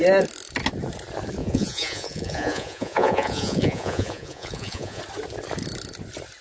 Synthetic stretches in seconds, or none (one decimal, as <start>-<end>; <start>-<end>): 1.4-5.0